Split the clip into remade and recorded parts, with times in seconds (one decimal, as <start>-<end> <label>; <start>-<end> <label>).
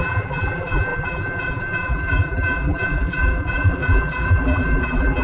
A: 0.0-5.2 remade